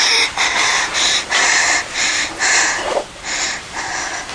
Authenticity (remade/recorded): remade